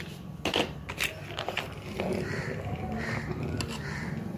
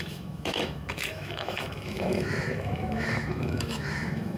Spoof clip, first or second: second